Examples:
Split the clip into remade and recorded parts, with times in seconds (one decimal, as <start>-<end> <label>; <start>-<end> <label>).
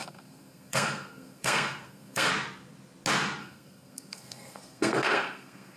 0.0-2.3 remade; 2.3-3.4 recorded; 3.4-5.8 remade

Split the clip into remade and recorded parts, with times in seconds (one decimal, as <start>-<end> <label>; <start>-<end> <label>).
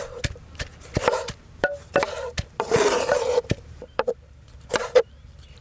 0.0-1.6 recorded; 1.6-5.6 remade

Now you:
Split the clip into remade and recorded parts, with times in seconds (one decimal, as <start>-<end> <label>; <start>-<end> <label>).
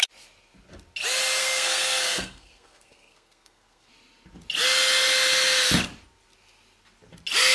0.0-1.4 recorded; 1.4-3.9 remade; 3.9-7.5 recorded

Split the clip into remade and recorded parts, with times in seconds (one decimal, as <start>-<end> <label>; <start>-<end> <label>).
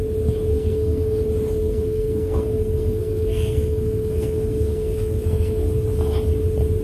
0.0-0.5 recorded; 0.5-1.2 remade; 1.2-1.6 recorded; 1.6-5.7 remade; 5.7-6.8 recorded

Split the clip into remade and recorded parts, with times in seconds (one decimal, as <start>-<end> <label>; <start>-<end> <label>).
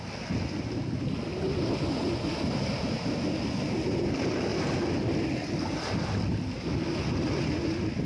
0.0-8.1 recorded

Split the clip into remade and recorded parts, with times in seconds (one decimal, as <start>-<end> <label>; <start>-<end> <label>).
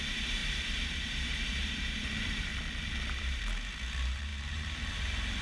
0.0-2.5 remade; 2.5-3.2 recorded; 3.2-5.4 remade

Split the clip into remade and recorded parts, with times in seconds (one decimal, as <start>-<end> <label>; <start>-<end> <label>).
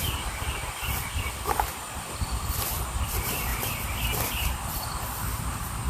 0.0-3.5 remade; 3.5-5.5 recorded; 5.5-5.9 remade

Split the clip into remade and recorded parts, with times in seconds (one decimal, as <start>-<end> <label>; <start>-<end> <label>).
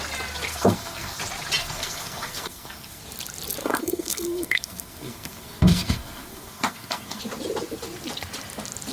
0.0-0.5 recorded; 0.5-1.2 remade; 1.2-1.6 recorded; 1.6-3.0 remade; 3.0-3.6 recorded; 3.6-7.2 remade; 7.2-8.9 recorded